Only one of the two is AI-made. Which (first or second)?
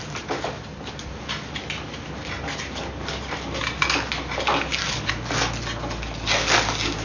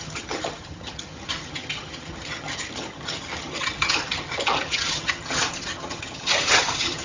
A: second